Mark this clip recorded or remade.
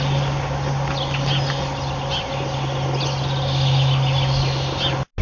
recorded